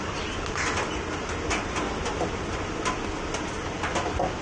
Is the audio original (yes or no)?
yes